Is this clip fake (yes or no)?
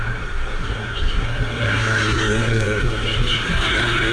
yes